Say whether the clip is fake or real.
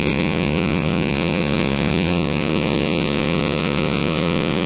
fake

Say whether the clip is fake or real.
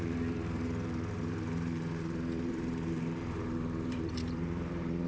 fake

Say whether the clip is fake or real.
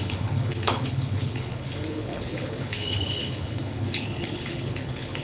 fake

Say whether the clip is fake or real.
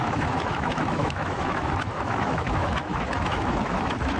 fake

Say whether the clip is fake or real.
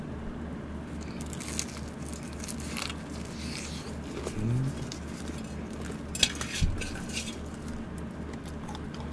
real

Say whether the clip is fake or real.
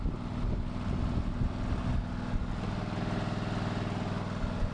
real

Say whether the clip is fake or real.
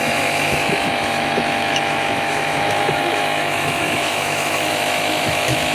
fake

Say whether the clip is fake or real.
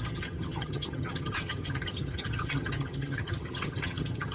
fake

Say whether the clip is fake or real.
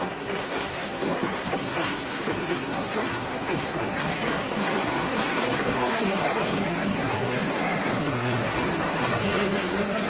fake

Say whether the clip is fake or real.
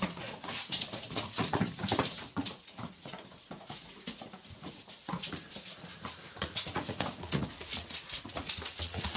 fake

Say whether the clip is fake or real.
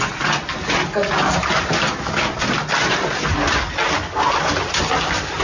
real